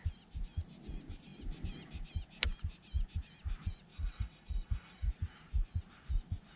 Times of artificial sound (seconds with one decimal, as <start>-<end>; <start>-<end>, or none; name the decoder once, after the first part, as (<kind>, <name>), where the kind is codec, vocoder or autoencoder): 3.9-5.1 (vocoder, Vocos)